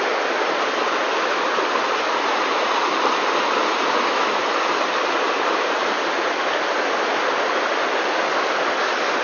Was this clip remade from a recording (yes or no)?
no